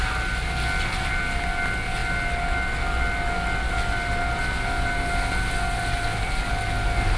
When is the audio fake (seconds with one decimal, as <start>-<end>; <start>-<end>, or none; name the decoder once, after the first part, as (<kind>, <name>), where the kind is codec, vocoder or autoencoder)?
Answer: none